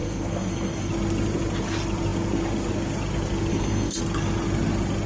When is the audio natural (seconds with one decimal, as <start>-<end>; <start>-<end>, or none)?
0.9-3.5; 4.0-5.1